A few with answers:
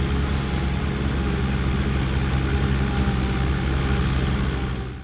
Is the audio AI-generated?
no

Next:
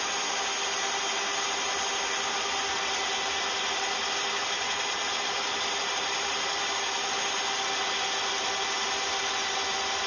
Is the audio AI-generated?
no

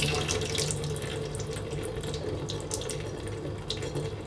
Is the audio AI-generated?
no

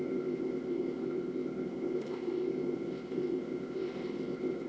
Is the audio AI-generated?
yes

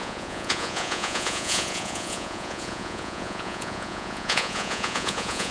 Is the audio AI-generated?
yes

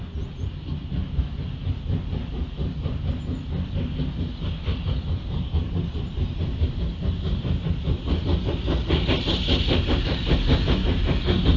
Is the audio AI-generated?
no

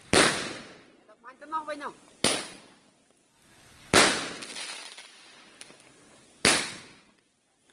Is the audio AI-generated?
yes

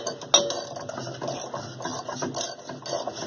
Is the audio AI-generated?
no